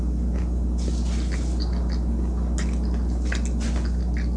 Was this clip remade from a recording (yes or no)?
no